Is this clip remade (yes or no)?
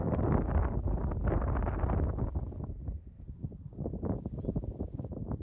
no